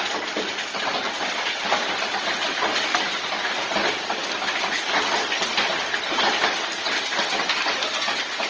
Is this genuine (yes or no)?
yes